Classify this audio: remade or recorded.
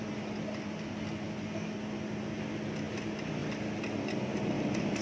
recorded